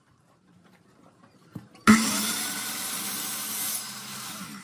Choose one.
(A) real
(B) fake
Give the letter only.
B